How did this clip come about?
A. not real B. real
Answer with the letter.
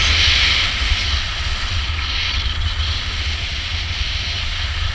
B